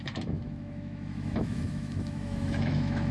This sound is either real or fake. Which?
fake